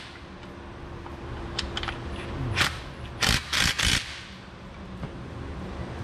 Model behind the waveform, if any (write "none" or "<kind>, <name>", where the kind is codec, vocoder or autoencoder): none